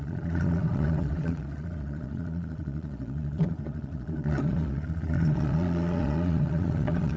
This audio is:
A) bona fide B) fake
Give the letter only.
B